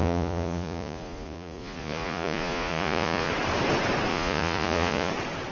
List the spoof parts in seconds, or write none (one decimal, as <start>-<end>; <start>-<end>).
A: 0.0-3.3; 4.1-5.1